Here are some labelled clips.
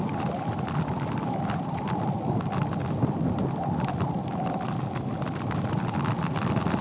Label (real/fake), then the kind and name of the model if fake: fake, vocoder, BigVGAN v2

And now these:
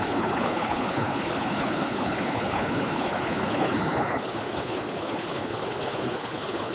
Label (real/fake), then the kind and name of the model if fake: fake, codec, HILCodec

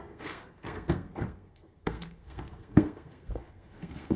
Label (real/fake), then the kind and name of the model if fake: fake, codec, SNAC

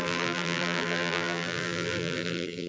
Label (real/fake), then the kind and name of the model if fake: fake, vocoder, BigVGAN v2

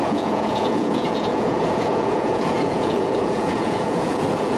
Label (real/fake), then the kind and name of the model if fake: fake, vocoder, Vocos